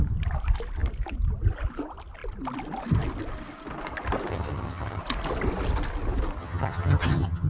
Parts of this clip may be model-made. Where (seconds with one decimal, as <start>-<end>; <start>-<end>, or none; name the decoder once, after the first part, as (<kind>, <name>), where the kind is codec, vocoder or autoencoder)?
4.3-5.0 (vocoder, HiFi-GAN); 6.4-7.5